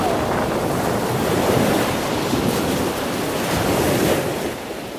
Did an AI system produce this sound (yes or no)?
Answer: yes